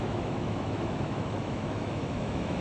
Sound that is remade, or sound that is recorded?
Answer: remade